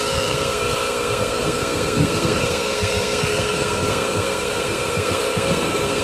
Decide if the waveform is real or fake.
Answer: fake